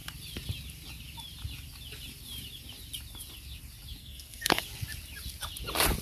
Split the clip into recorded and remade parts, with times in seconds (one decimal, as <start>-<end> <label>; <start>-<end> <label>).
0.0-4.0 recorded; 4.0-4.6 remade; 4.6-6.0 recorded